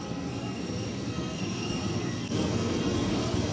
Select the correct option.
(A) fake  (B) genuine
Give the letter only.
A